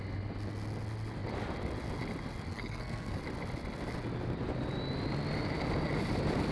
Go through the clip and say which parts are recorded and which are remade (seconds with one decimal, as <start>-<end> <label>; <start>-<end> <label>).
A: 0.0-2.5 recorded; 2.5-3.2 remade; 3.2-6.5 recorded